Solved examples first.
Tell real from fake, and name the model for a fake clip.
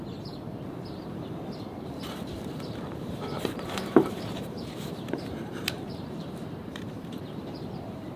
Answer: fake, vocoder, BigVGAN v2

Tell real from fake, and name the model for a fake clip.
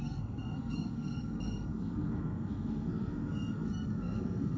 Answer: fake, codec, SNAC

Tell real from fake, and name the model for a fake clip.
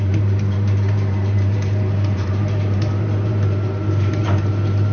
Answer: fake, vocoder, BigVGAN v2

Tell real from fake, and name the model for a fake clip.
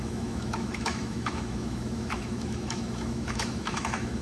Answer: fake, autoencoder, DAC-VAE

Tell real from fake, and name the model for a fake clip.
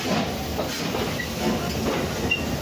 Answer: real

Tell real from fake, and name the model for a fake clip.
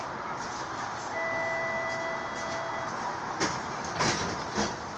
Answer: real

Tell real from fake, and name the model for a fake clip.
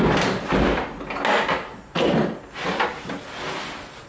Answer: real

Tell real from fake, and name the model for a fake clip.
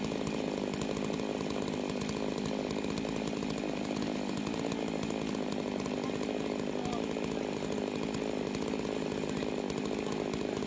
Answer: real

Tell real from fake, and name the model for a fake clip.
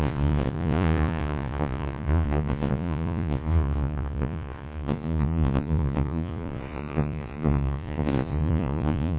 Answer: fake, vocoder, Vocos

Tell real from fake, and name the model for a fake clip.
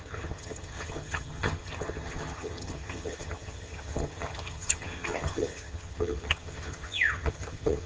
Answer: fake, vocoder, HiFi-GAN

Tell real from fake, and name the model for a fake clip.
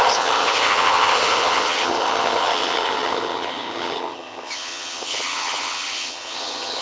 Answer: fake, vocoder, HiFi-GAN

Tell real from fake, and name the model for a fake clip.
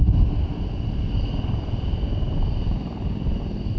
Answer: real